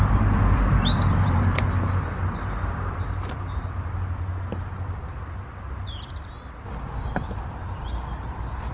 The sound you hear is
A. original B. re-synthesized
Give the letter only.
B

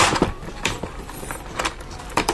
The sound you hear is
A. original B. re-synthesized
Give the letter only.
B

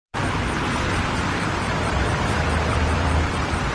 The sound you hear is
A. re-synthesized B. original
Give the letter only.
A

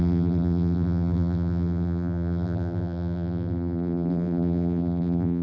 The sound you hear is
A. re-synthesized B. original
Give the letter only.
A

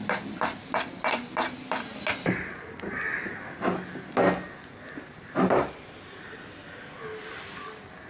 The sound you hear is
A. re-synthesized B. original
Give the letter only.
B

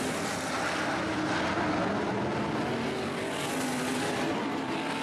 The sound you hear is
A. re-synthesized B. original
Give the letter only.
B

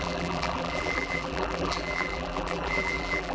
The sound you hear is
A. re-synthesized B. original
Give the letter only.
A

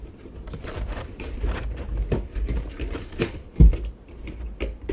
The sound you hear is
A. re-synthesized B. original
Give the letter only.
A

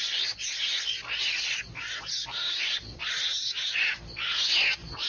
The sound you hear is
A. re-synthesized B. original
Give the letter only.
B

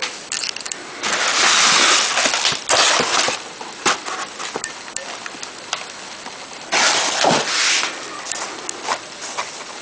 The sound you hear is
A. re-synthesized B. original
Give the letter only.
B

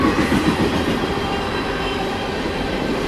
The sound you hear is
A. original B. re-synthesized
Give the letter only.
A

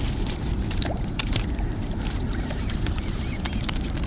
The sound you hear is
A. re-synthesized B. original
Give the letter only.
A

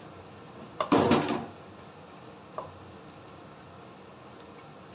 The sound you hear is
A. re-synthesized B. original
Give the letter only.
B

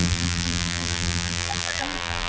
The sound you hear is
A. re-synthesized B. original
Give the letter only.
A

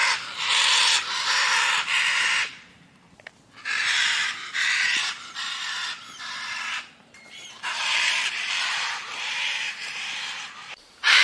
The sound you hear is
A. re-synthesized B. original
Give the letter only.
A